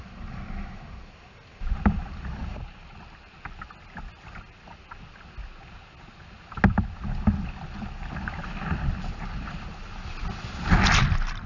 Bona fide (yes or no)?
yes